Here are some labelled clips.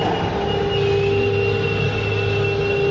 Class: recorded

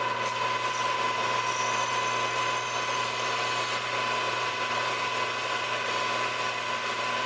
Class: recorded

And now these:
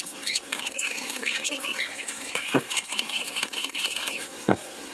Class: remade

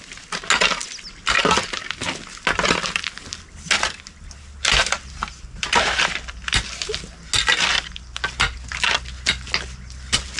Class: recorded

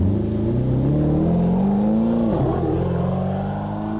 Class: recorded